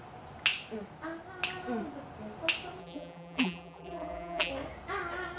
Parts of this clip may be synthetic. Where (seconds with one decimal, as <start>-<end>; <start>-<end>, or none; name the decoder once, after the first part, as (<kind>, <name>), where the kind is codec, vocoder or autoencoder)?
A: 2.8-4.5 (vocoder, BigVGAN v2)